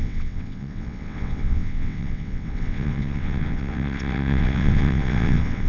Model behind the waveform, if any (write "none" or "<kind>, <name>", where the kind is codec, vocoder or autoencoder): vocoder, WaveNeXt